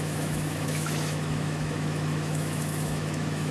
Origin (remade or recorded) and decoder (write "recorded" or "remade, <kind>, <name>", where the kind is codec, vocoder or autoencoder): remade, autoencoder, DAC-VAE